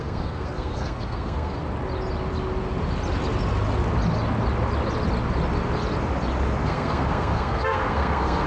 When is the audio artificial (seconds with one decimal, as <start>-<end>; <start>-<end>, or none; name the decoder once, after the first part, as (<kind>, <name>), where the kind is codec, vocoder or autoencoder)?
0.0-1.6 (codec, SNAC); 6.6-8.5